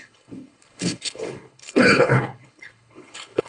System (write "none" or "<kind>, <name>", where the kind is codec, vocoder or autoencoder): codec, HILCodec